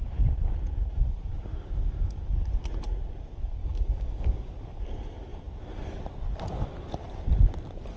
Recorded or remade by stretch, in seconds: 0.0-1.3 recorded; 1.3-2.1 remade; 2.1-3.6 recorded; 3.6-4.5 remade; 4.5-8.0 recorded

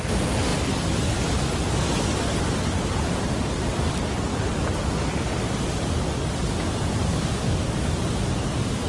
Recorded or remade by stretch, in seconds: 0.0-7.1 recorded; 7.1-7.9 remade; 7.9-8.9 recorded

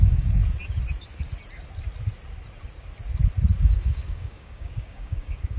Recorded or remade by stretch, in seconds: 0.0-0.4 remade; 0.4-3.6 recorded; 3.6-5.6 remade

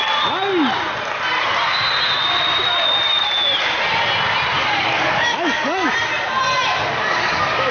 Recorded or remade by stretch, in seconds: 0.0-4.6 recorded; 4.6-5.9 remade; 5.9-6.8 recorded; 6.8-7.7 remade

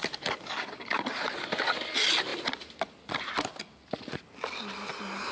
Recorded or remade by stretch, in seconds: 0.0-1.2 remade; 1.2-5.3 recorded

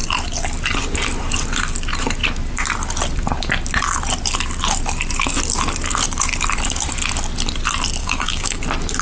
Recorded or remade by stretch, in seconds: 0.0-8.0 recorded; 8.0-8.6 remade; 8.6-9.0 recorded

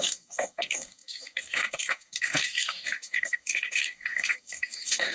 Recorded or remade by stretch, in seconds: 0.0-5.1 remade